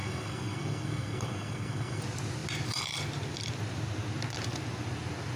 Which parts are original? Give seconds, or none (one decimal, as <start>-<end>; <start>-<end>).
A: 2.0-5.4